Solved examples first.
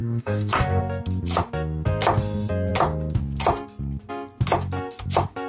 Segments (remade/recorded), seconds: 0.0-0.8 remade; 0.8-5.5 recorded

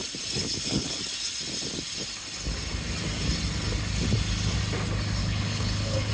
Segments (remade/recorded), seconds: 0.0-0.4 recorded; 0.4-1.0 remade; 1.0-5.2 recorded; 5.2-6.1 remade

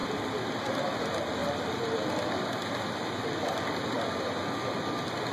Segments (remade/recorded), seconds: 0.0-1.4 recorded; 1.4-2.8 remade; 2.8-5.3 recorded